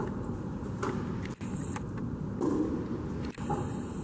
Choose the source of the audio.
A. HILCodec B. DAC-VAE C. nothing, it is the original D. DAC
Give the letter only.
C